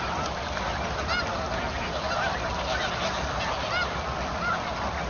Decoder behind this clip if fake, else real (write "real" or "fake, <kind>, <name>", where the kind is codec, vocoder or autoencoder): real